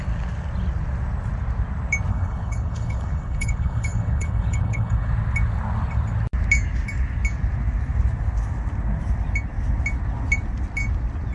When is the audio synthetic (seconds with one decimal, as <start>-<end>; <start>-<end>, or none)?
2.1-5.1